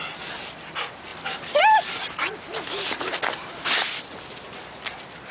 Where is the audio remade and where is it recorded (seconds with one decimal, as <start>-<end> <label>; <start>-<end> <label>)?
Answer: 0.0-5.3 recorded